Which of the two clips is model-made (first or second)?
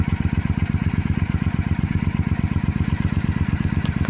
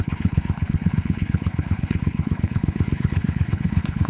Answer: second